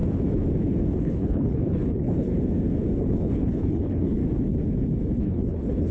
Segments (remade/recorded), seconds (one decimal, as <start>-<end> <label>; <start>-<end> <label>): 0.0-1.0 recorded; 1.0-2.3 remade; 2.3-3.0 recorded; 3.0-4.2 remade; 4.2-5.2 recorded; 5.2-5.9 remade